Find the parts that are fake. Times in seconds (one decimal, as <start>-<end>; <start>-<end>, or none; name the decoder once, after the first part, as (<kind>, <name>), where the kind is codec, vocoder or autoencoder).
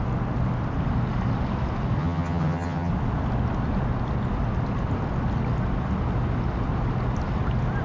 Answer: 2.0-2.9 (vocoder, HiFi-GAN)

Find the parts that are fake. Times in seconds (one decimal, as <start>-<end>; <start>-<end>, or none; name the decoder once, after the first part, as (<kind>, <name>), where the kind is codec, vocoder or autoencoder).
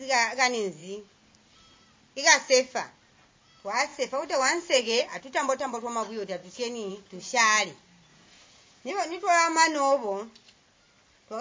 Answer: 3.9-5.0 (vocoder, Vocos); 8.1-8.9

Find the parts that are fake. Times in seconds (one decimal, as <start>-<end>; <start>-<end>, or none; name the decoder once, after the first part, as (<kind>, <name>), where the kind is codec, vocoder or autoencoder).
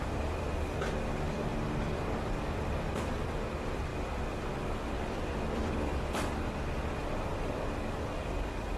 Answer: 0.0-7.3 (vocoder, BigVGAN v2); 8.1-8.8